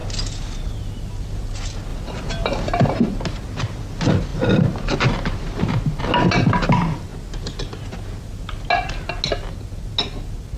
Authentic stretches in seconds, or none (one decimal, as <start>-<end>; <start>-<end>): 0.0-1.9; 2.8-4.3; 6.0-10.6

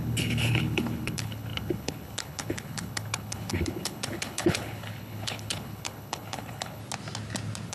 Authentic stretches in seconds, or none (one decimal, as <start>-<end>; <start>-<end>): 6.8-7.7

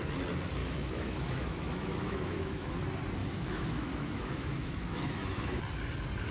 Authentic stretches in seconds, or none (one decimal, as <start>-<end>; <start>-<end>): 0.0-0.6; 2.7-3.2; 5.6-6.3

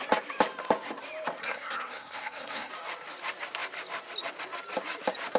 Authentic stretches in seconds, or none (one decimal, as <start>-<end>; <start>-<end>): 0.0-1.4; 2.7-5.4

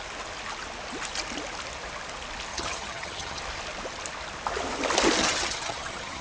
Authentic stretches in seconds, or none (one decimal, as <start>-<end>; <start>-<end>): 0.0-2.5; 3.4-5.2

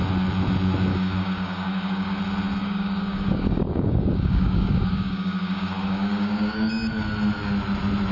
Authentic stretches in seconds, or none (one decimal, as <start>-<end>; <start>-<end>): 0.0-0.9; 2.2-2.6; 6.7-8.1

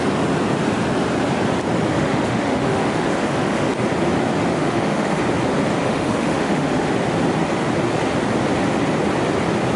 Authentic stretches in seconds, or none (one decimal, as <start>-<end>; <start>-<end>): 0.0-1.9; 3.7-4.5; 5.2-5.8; 6.9-9.8